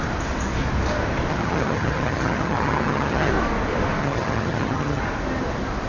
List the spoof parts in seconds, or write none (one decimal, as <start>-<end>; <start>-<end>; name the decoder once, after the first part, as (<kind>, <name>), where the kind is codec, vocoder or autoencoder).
1.3-3.3 (vocoder, HiFi-GAN); 4.0-5.0